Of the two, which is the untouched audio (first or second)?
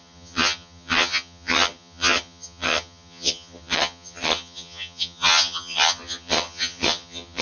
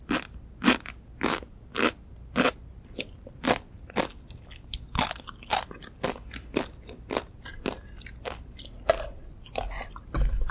second